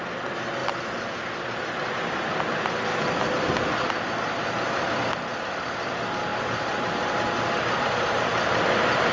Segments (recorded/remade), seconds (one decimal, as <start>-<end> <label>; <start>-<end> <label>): 0.0-9.1 recorded